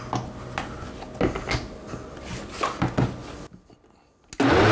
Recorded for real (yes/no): yes